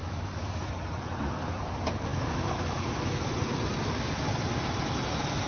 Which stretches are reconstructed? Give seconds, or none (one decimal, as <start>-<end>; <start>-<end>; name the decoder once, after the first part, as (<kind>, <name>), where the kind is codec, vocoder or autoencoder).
0.0-0.7 (autoencoder, DAC-VAE); 2.1-3.3